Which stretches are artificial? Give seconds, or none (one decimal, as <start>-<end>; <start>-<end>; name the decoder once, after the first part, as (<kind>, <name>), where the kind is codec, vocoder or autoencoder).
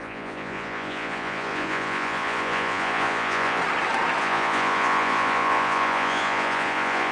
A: 0.0-3.6 (vocoder, Vocos); 4.2-7.1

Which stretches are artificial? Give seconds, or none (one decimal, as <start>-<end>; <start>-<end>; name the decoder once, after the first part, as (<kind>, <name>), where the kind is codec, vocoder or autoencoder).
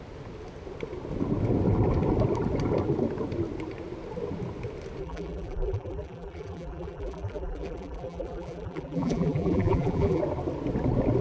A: 5.0-10.2 (vocoder, BigVGAN v2)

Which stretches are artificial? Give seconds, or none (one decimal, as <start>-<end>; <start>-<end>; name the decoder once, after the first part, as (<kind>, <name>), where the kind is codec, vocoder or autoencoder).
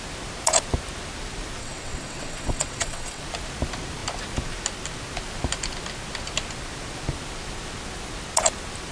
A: 1.6-3.2 (vocoder, WaveNeXt)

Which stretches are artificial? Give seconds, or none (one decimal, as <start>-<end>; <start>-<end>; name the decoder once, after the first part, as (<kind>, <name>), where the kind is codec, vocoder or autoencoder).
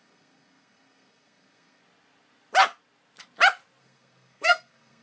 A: 0.0-1.8 (codec, SNAC); 3.8-5.0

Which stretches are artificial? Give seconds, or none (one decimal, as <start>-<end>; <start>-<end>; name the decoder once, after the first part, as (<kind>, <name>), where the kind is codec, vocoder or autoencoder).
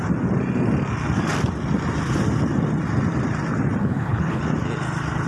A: 3.8-4.4 (codec, HILCodec)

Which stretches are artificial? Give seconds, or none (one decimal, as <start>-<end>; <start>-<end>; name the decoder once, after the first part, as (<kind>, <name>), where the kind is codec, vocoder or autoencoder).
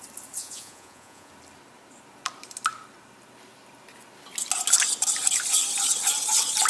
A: 0.4-1.3 (vocoder, Vocos)